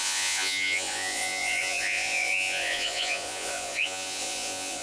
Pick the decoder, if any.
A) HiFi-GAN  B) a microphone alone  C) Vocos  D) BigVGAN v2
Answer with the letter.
C